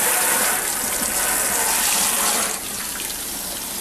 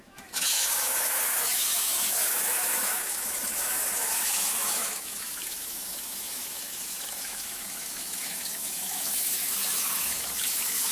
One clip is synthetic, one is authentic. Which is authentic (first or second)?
first